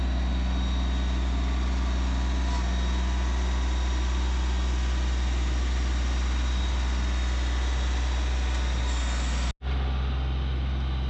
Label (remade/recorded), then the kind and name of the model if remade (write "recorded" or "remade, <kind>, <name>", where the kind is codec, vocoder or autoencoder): recorded